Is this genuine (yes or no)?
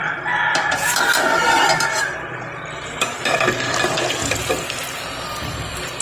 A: yes